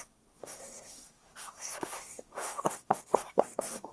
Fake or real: fake